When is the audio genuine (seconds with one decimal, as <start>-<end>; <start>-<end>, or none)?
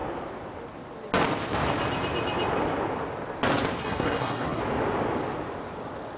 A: 0.0-3.8; 4.6-6.2